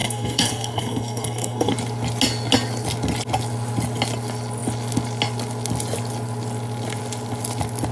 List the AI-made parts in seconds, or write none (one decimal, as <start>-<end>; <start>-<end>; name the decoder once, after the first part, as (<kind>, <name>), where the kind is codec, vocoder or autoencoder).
0.0-1.7 (codec, SNAC)